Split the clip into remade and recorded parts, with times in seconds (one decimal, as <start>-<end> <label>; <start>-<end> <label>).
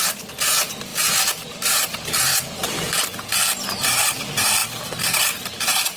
0.0-2.3 remade; 2.3-3.3 recorded; 3.3-6.0 remade